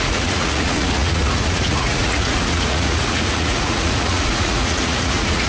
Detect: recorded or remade remade